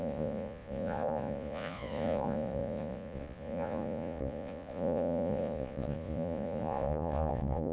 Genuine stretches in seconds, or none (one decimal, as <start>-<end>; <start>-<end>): none